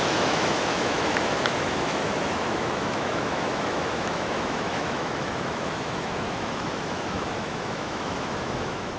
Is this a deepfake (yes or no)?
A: yes